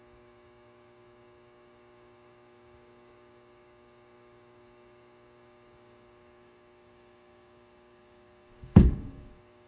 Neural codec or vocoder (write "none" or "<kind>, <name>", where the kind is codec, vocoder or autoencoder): codec, DAC